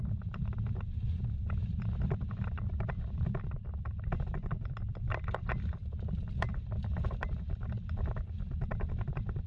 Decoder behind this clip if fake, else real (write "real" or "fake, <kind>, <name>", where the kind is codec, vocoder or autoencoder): real